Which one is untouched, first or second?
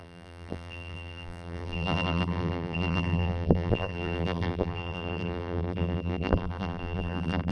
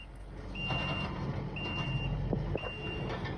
second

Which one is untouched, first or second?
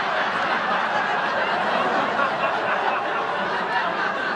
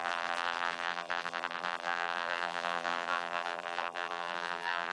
first